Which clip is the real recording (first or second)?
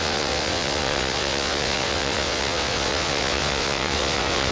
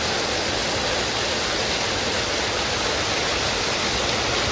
second